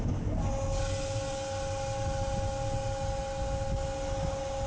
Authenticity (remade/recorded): recorded